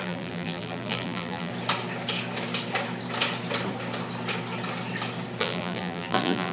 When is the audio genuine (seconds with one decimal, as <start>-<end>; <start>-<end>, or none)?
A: 1.5-5.4